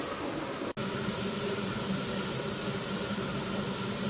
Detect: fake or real real